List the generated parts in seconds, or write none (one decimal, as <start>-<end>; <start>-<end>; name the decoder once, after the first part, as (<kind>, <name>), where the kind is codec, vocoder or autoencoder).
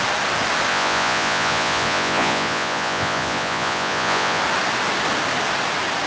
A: 0.7-4.4 (vocoder, Vocos)